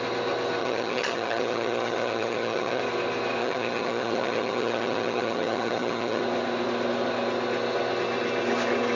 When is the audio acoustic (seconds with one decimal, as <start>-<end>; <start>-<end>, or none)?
0.0-0.6; 2.8-3.4; 6.2-9.0